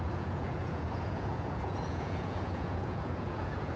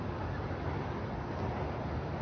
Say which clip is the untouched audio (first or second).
second